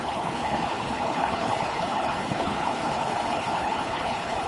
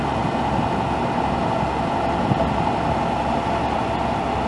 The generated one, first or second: first